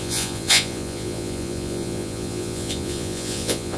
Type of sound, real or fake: fake